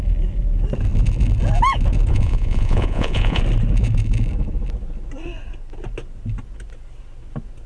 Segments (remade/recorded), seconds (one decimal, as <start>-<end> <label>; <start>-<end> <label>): 0.0-2.1 recorded; 2.1-3.4 remade; 3.4-7.7 recorded